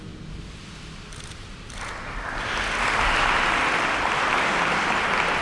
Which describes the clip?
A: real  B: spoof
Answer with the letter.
A